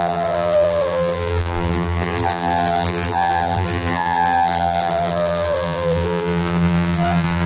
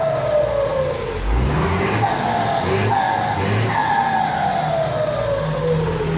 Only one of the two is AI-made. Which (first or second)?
first